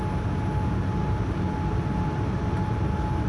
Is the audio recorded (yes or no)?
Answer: yes